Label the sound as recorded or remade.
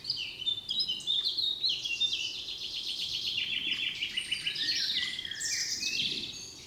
recorded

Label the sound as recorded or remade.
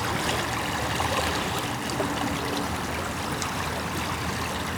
recorded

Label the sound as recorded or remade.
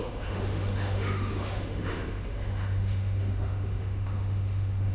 remade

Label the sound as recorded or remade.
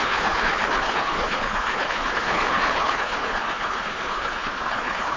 remade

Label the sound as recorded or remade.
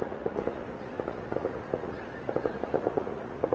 remade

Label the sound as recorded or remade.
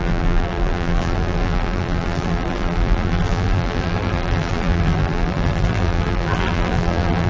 remade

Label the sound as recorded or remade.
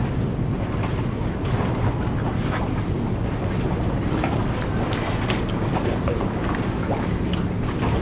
recorded